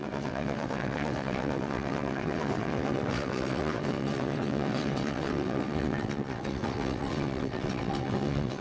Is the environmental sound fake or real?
fake